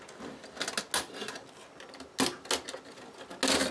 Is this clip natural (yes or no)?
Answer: yes